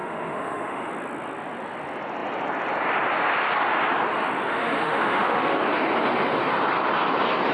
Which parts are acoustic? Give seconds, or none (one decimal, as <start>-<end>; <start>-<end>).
0.9-4.5; 5.6-7.5